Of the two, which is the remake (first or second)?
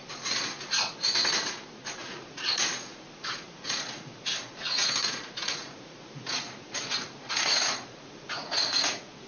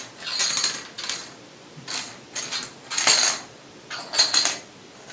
first